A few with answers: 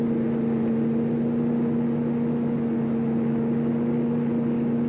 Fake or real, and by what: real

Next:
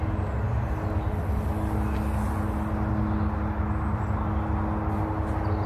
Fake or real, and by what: real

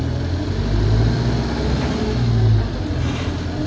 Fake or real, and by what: real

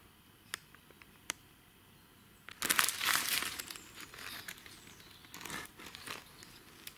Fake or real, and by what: real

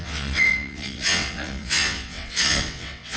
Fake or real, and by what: fake, vocoder, WaveNeXt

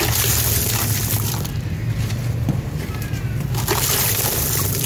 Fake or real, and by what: real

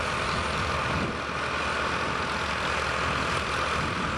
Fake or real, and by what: real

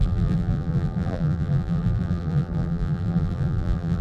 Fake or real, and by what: fake, vocoder, BigVGAN v2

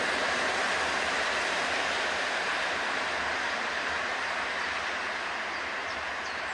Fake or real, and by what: fake, vocoder, BigVGAN v2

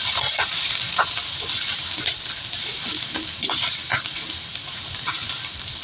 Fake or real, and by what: real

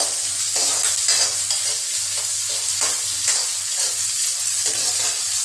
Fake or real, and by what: real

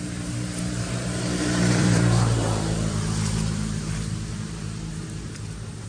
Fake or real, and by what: fake, vocoder, BigVGAN v2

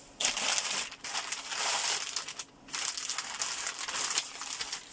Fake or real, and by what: real